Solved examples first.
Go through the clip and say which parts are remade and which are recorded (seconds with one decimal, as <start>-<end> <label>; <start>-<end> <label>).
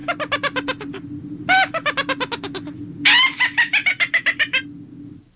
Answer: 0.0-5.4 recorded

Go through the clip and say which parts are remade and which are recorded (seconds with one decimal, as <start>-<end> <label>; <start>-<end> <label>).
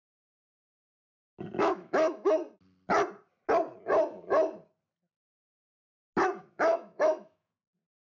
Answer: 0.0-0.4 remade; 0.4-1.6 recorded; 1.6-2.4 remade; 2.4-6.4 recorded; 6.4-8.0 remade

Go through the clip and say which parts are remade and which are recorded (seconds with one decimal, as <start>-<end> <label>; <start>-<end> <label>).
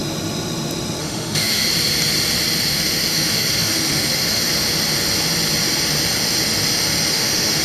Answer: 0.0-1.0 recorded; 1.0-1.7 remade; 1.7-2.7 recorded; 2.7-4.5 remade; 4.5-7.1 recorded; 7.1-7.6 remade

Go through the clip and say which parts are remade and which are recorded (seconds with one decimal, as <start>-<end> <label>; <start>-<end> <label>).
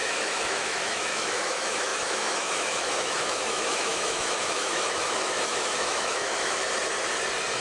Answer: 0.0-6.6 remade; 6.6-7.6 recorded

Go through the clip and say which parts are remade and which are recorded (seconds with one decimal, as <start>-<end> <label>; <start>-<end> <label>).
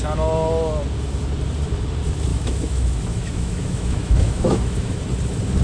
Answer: 0.0-2.3 recorded; 2.3-5.0 remade; 5.0-5.6 recorded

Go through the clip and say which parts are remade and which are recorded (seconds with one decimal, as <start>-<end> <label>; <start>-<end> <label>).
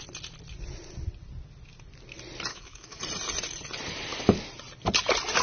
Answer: 0.0-2.5 recorded; 2.5-3.0 remade; 3.0-5.4 recorded